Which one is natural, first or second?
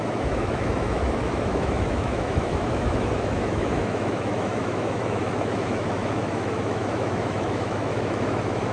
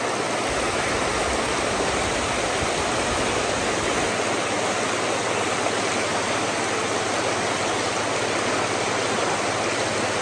second